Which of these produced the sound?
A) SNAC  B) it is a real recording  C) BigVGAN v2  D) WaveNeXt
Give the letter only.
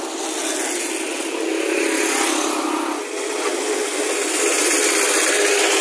B